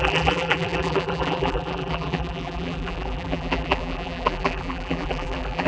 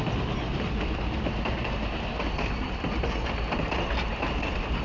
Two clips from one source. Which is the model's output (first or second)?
first